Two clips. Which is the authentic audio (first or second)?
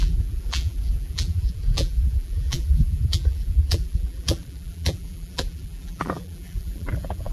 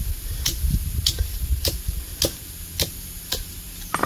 second